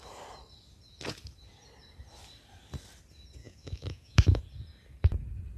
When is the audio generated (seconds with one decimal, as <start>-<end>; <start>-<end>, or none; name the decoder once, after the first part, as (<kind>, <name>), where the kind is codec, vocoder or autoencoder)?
3.4-4.4 (autoencoder, DAC-VAE)